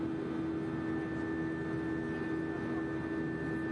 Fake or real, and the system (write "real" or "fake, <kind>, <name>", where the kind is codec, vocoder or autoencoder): real